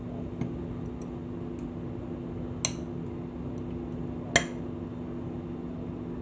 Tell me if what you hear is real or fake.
real